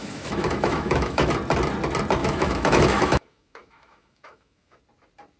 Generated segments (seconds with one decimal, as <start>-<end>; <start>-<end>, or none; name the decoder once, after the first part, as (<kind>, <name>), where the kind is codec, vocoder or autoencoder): 0.0-1.3 (autoencoder, DAC-VAE); 2.2-4.8